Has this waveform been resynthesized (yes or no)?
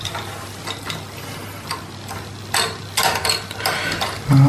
no